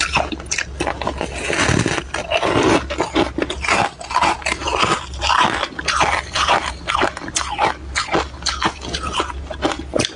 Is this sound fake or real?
real